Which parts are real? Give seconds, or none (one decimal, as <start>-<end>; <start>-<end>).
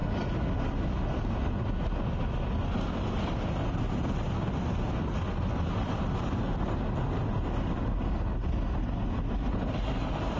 0.0-10.4